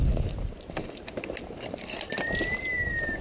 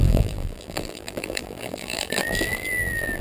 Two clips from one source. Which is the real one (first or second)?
first